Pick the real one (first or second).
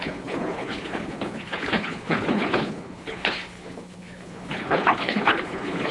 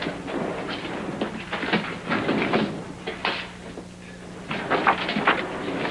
second